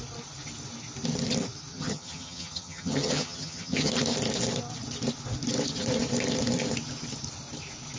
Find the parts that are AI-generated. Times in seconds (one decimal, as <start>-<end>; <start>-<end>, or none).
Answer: 1.7-3.9

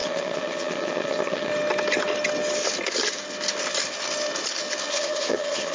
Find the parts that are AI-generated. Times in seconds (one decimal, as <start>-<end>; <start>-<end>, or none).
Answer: 0.0-1.5; 4.9-5.7

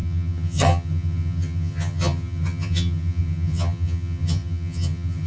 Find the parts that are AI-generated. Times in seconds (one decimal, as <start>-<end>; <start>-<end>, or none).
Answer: 0.0-5.3

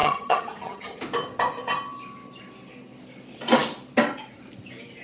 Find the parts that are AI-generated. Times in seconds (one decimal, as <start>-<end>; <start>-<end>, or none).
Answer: 0.0-1.0

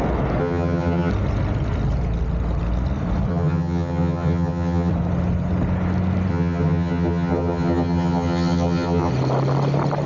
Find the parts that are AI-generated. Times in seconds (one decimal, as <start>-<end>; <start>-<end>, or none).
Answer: 0.4-1.1; 3.3-4.9; 6.3-9.1

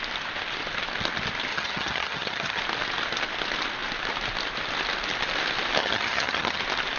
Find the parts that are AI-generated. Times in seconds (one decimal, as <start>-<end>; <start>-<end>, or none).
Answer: 1.5-2.6; 5.8-6.6

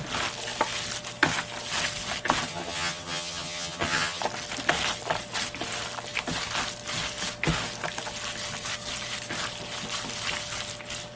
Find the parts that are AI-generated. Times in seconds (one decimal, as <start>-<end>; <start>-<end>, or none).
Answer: 2.5-4.2